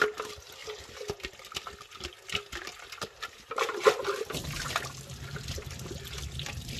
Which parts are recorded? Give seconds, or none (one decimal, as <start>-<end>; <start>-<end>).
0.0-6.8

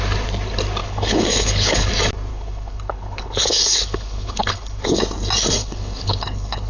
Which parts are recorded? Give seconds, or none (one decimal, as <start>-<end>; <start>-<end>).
0.0-0.8; 1.9-2.3; 5.0-5.6

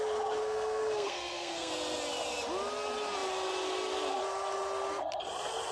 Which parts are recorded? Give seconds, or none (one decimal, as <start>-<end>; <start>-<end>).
0.0-0.4; 1.7-5.7

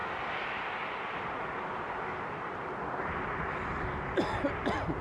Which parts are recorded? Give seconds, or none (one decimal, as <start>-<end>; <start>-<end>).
0.0-3.0

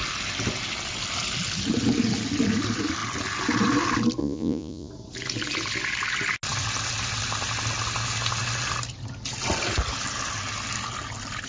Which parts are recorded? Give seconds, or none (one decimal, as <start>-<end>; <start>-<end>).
0.0-4.2; 4.9-11.5

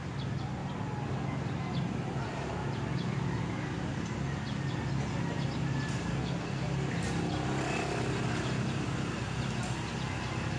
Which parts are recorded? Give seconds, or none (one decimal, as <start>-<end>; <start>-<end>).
0.0-6.1; 6.6-10.6

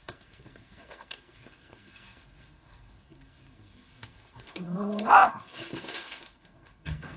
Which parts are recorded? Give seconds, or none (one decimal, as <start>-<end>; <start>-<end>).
none

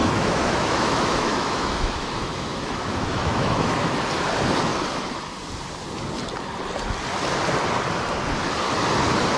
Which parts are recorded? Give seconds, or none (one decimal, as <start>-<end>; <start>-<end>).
3.9-9.4